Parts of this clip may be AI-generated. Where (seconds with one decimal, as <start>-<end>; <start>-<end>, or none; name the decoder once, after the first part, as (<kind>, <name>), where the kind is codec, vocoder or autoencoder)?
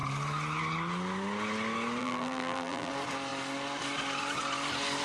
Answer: 2.0-2.9 (vocoder, BigVGAN v2)